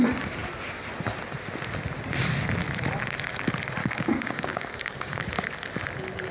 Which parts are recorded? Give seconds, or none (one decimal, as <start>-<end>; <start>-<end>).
0.0-3.8; 5.2-6.3